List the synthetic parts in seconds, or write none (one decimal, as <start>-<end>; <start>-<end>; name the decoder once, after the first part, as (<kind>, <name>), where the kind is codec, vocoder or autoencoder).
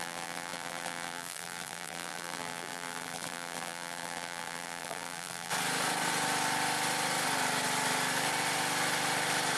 0.0-5.5 (vocoder, BigVGAN v2)